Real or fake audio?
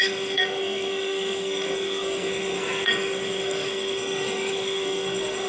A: fake